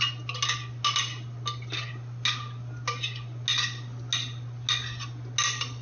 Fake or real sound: real